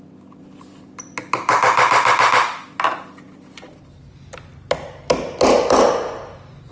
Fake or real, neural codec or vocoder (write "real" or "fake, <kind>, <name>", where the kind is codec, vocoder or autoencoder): real